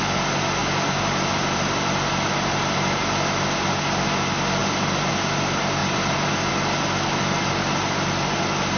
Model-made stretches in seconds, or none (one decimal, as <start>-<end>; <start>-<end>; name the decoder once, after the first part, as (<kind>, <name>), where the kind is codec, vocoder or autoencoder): 4.6-5.1 (vocoder, BigVGAN v2); 5.8-6.5